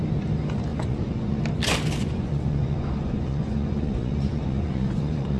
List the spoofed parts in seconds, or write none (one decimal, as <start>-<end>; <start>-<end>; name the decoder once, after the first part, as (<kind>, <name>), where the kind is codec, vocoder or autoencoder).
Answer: 0.7-1.4 (vocoder, Vocos); 2.0-5.4

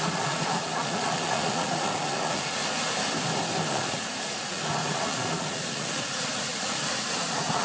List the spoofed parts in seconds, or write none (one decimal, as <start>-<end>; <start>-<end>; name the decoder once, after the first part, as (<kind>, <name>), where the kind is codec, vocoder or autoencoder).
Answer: 0.0-2.6 (vocoder, Vocos); 3.7-7.6

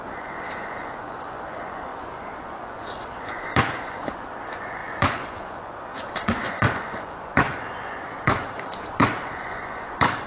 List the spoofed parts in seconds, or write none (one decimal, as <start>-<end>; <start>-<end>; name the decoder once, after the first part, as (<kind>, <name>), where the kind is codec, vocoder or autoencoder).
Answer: 0.0-10.3 (vocoder, Vocos)

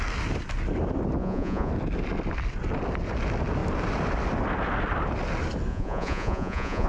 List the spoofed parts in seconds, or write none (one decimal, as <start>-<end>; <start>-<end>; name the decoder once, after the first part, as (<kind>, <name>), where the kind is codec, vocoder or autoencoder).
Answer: 1.2-1.7 (vocoder, Vocos); 5.7-6.9